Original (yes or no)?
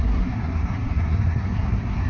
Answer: no